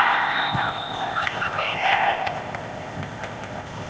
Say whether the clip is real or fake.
fake